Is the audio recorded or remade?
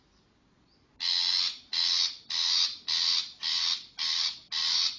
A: recorded